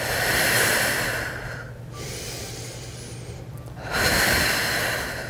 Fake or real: real